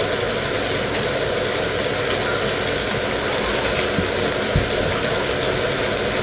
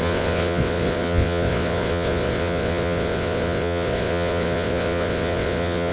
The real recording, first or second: first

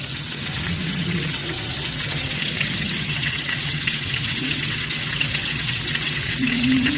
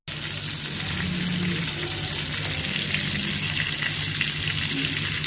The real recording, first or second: second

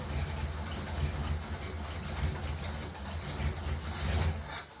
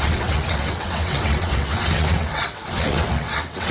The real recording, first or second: first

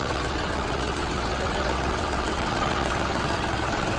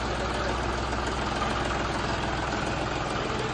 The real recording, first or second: second